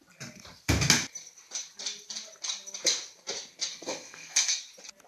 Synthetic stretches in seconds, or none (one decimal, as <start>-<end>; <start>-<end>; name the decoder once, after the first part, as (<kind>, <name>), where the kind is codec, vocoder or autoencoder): 3.7-4.6 (codec, SNAC)